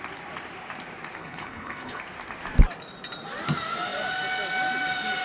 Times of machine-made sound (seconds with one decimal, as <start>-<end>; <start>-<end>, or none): 1.2-2.0